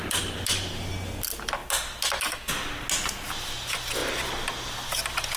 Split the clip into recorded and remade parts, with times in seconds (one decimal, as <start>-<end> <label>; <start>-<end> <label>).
0.0-5.4 recorded